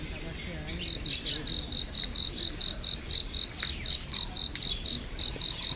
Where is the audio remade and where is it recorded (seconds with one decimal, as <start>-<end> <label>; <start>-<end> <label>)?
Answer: 0.0-5.8 recorded